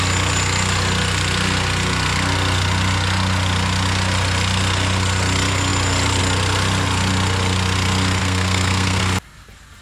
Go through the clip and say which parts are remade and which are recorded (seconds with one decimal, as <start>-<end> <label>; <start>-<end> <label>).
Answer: 0.0-8.2 recorded; 8.2-9.0 remade; 9.0-9.8 recorded